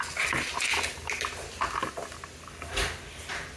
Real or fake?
real